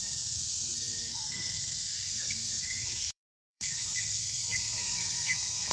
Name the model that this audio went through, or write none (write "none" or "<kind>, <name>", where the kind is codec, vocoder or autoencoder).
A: codec, SNAC